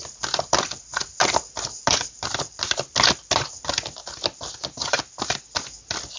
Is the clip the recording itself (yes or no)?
yes